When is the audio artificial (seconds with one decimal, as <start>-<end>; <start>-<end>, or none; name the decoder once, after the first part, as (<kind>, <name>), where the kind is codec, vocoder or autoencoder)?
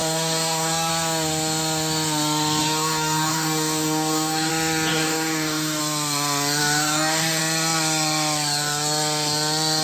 0.0-0.9 (codec, DAC); 2.6-4.5; 4.9-5.8; 6.6-7.4